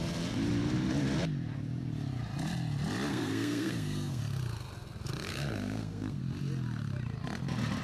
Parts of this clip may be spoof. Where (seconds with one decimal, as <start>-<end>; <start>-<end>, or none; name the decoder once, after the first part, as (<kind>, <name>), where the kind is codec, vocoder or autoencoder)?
3.1-4.2 (codec, SNAC); 5.3-6.2